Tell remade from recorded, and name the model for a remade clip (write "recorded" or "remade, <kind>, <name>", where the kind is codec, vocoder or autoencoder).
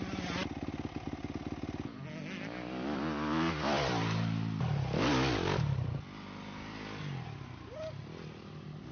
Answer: recorded